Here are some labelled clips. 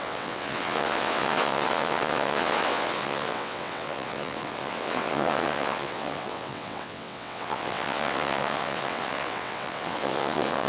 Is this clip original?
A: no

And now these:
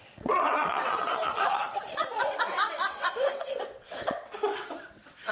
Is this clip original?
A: no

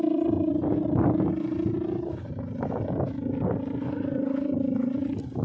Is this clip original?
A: yes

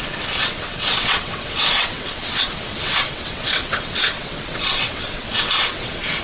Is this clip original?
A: no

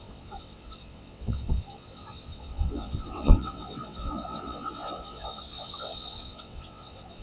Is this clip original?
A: no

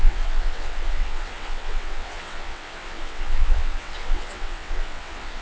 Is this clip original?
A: no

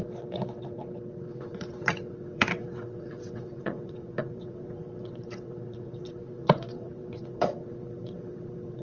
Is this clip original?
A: no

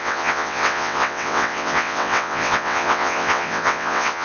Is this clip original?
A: no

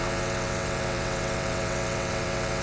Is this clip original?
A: no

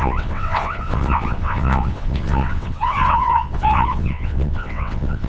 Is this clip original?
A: no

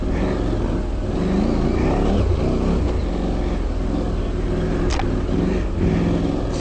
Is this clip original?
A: yes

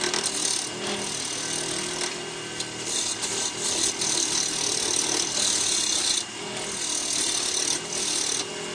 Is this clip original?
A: yes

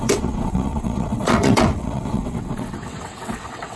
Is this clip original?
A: no